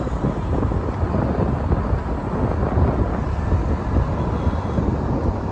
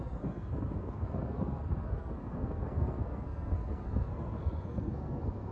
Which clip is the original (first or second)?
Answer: first